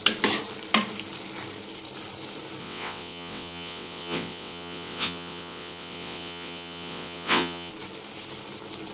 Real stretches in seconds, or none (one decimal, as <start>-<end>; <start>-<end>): 0.0-2.6; 7.7-8.9